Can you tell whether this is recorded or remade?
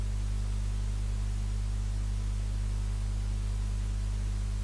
recorded